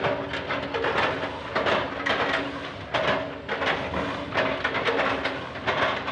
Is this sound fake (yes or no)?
no